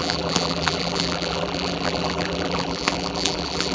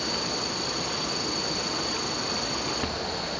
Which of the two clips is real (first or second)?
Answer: second